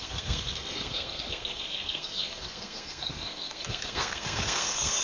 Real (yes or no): no